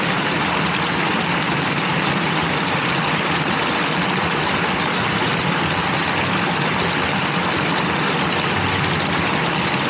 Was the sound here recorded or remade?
recorded